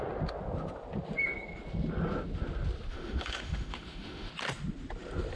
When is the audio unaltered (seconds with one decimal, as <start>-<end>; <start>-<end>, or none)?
0.0-2.9; 4.3-5.4